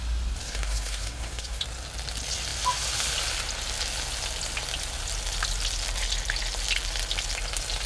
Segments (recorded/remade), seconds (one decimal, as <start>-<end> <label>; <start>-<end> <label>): 0.0-0.4 recorded; 0.4-1.6 remade; 1.6-7.9 recorded